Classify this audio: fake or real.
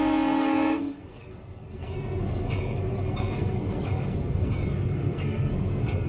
fake